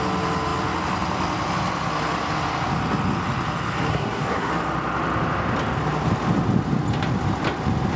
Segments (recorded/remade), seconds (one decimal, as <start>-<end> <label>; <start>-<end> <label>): 0.0-3.9 recorded; 3.9-4.5 remade; 4.5-8.0 recorded